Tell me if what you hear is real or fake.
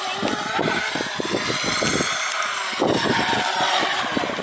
real